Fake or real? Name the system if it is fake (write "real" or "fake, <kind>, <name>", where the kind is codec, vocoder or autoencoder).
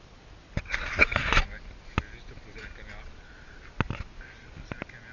real